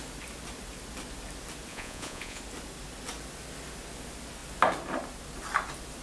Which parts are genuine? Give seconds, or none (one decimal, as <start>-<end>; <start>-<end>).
0.0-1.7; 2.4-6.0